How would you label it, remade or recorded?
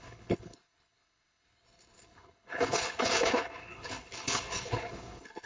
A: remade